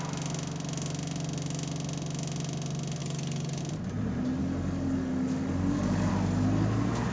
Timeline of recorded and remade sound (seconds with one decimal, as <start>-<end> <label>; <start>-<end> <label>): 0.0-3.0 recorded; 3.0-3.6 remade; 3.6-4.4 recorded; 4.4-6.1 remade; 6.1-7.1 recorded